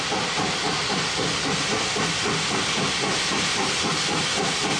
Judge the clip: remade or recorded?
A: recorded